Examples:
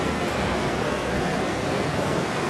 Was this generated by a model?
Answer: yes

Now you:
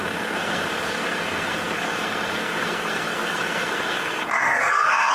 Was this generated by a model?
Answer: yes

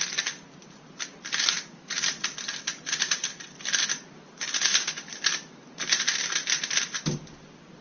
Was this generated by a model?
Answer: no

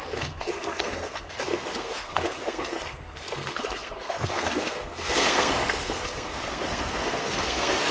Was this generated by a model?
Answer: yes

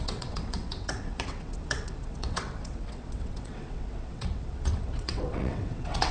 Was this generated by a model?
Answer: yes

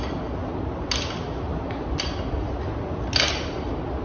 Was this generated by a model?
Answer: no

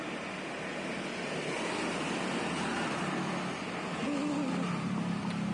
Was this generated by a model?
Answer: no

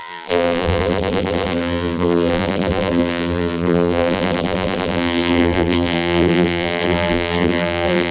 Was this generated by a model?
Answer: yes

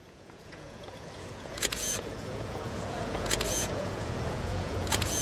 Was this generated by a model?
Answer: yes